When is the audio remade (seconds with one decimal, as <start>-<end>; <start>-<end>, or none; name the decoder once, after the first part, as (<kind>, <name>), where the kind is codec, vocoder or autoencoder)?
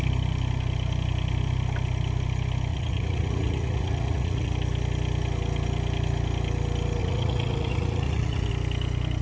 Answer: 2.7-4.5 (vocoder, Vocos); 7.0-8.5